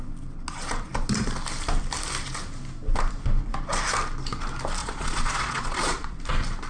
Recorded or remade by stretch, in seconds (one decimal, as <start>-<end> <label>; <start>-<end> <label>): 0.0-4.8 recorded; 4.8-6.2 remade; 6.2-6.7 recorded